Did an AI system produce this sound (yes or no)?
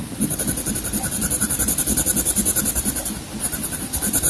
no